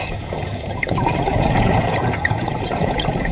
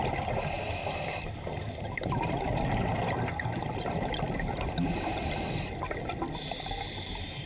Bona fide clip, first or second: second